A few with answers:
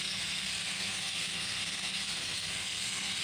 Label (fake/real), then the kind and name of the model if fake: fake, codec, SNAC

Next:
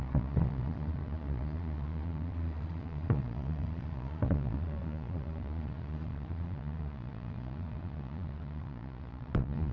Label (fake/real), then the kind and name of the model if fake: fake, vocoder, Vocos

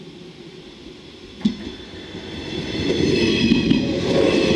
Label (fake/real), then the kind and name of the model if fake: real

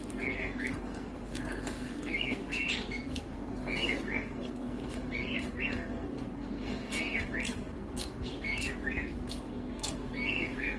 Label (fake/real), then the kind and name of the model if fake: fake, codec, SNAC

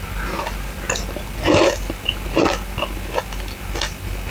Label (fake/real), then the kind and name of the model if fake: real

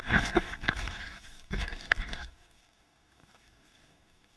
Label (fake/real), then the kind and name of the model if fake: fake, codec, DAC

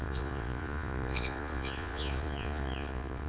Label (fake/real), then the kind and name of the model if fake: fake, vocoder, Vocos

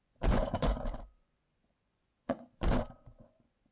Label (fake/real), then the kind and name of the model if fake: fake, vocoder, Vocos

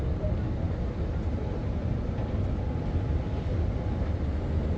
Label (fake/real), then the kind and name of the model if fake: real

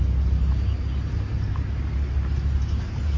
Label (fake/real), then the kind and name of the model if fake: real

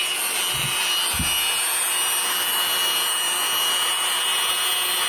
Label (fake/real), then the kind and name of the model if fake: real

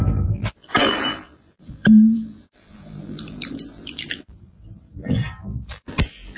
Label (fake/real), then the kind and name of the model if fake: fake, vocoder, BigVGAN v2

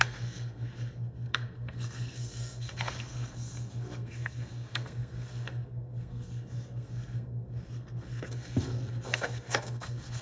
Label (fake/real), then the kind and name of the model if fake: fake, codec, SNAC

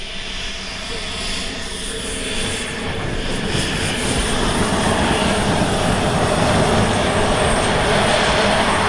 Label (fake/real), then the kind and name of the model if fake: real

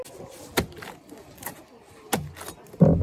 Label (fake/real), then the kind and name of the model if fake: real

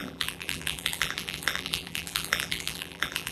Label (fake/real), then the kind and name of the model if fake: fake, vocoder, BigVGAN v2